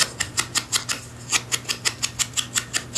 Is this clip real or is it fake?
real